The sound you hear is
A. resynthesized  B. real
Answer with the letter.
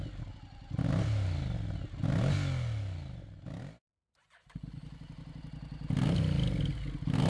B